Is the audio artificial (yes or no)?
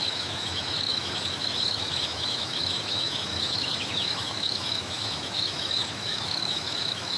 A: yes